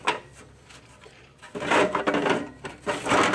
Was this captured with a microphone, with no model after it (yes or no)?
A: yes